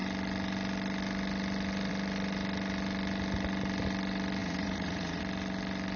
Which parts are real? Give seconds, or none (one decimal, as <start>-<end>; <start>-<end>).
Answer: 0.0-4.4; 5.2-6.0